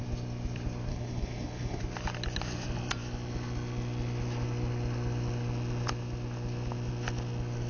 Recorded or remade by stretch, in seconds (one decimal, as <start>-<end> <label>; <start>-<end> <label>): 0.0-0.9 recorded; 0.9-1.8 remade; 1.8-7.7 recorded